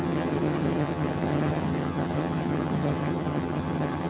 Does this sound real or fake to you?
fake